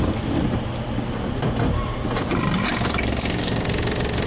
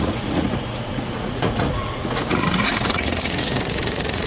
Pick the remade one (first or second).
second